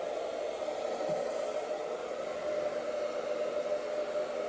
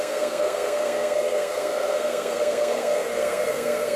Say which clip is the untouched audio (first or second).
first